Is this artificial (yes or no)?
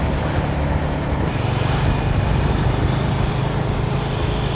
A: no